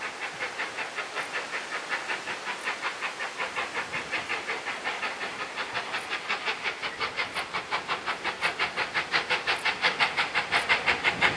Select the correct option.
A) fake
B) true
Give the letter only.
B